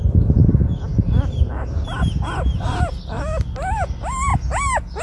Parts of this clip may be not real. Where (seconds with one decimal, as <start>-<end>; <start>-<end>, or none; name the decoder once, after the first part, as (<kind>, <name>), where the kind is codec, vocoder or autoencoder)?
none